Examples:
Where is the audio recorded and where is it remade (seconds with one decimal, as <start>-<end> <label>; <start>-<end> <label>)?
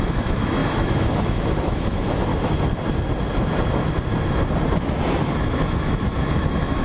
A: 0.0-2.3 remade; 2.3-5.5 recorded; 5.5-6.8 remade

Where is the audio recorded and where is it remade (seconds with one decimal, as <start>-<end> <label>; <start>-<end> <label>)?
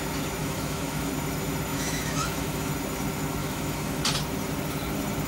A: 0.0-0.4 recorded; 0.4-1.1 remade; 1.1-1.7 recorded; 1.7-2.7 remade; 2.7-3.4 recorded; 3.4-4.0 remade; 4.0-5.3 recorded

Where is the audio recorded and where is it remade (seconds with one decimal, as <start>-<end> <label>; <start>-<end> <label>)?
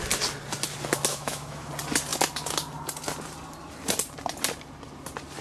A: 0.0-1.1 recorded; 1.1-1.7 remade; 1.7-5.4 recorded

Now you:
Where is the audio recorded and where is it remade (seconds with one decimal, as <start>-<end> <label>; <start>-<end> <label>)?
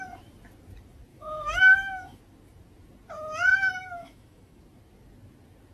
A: 0.0-1.1 recorded; 1.1-2.2 remade; 2.2-3.5 recorded; 3.5-4.6 remade; 4.6-5.7 recorded